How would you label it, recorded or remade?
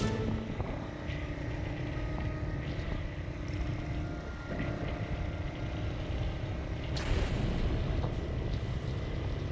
recorded